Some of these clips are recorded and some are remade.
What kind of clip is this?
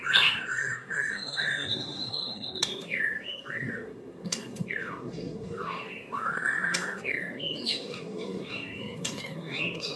remade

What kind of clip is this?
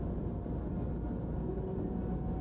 recorded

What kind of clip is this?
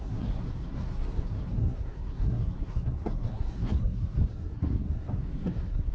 remade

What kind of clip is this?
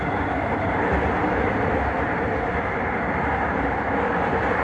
recorded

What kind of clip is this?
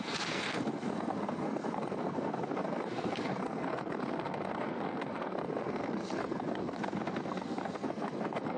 remade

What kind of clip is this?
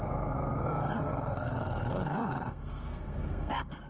remade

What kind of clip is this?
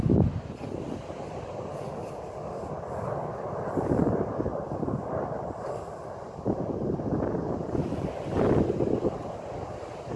recorded